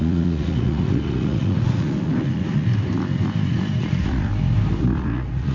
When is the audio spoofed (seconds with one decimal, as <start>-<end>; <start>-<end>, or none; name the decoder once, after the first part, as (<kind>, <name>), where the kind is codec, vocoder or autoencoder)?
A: 0.0-2.7 (vocoder, Vocos); 3.8-4.3; 4.8-5.5